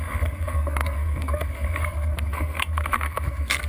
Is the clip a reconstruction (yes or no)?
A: yes